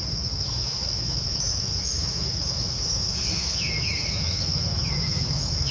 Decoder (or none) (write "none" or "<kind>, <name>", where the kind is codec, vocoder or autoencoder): autoencoder, DAC-VAE